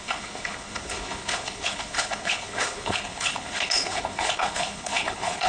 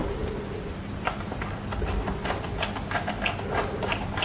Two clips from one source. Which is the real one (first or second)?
second